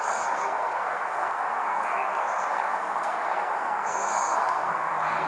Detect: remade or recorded remade